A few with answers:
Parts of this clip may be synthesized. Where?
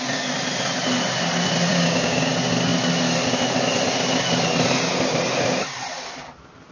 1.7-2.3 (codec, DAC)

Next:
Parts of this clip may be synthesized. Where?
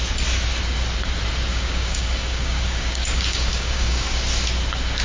1.5-4.2 (codec, DAC)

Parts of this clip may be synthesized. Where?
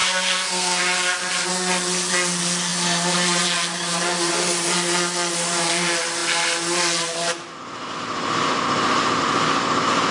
0.0-0.8 (codec, SNAC)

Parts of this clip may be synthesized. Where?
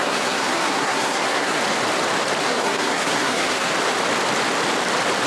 0.0-1.6 (codec, SNAC); 2.4-3.7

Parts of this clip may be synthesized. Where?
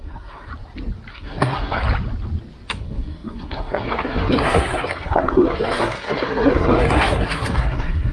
0.0-0.5 (codec, SNAC); 1.1-1.8; 2.7-8.1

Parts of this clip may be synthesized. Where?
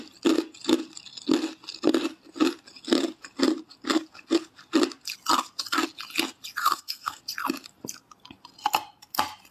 6.6-7.2 (codec, SNAC)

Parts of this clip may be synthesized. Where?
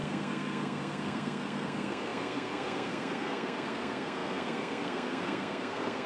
0.0-6.1 (codec, SNAC)